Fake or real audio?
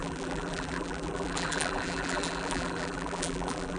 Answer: fake